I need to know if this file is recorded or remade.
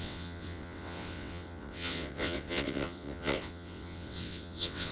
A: remade